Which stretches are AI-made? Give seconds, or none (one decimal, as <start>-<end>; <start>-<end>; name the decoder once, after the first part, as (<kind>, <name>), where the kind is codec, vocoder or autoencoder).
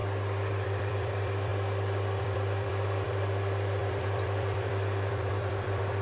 0.5-1.5 (vocoder, BigVGAN v2); 2.2-6.0